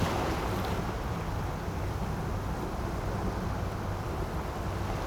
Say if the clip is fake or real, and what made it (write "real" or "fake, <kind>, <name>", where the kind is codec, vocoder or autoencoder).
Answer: real